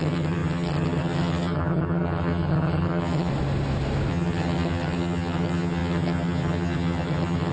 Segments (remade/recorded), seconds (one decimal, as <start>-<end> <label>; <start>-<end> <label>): 0.0-3.3 remade; 3.3-4.1 recorded; 4.1-7.5 remade